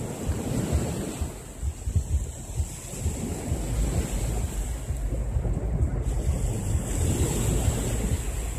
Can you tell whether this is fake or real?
real